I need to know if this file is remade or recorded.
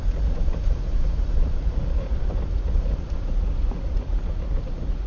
remade